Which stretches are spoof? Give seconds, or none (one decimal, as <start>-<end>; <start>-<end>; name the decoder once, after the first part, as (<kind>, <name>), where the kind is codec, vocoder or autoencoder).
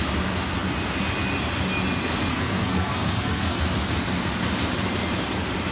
2.3-3.6 (codec, SNAC)